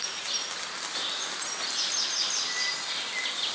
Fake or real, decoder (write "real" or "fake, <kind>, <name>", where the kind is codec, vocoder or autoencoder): real